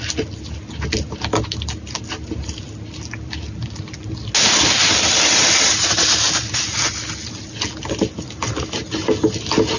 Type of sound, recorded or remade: recorded